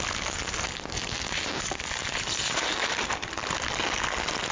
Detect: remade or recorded recorded